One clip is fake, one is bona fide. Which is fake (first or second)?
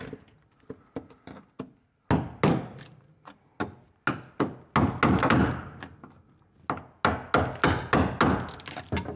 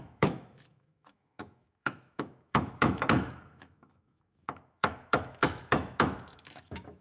second